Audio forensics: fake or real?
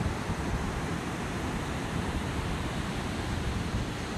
fake